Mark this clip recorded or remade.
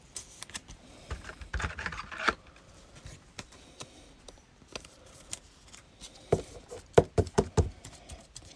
remade